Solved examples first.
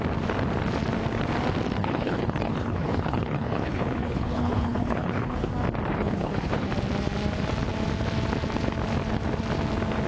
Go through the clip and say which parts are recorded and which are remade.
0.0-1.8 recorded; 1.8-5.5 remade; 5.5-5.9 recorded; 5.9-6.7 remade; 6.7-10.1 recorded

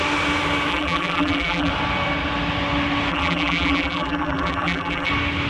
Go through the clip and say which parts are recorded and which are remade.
0.0-0.7 recorded; 0.7-1.7 remade; 1.7-3.1 recorded; 3.1-5.1 remade; 5.1-5.5 recorded

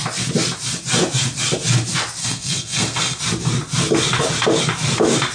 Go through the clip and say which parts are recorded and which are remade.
0.0-2.2 recorded; 2.2-3.2 remade; 3.2-5.3 recorded

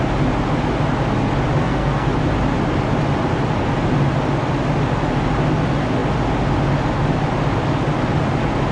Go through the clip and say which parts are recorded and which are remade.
0.0-1.6 recorded; 1.6-2.1 remade; 2.1-8.7 recorded

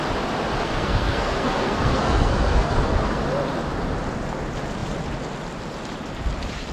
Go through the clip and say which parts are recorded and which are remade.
0.0-0.6 recorded; 0.6-3.2 remade; 3.2-6.7 recorded

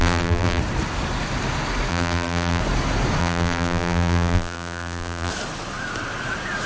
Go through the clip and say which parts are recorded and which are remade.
0.0-0.6 remade; 0.6-1.9 recorded; 1.9-2.6 remade; 2.6-3.2 recorded; 3.2-5.3 remade; 5.3-6.7 recorded

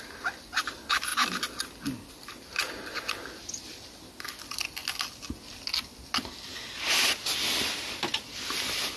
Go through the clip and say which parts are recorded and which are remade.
0.0-9.0 recorded